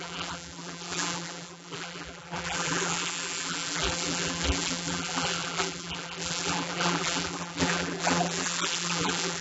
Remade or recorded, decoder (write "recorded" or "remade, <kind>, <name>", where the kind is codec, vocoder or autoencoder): remade, vocoder, BigVGAN v2